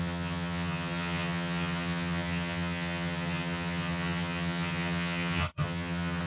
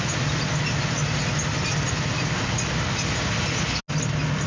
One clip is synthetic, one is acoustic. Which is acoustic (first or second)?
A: second